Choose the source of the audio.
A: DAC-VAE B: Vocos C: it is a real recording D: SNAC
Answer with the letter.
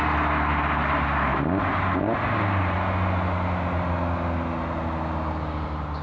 C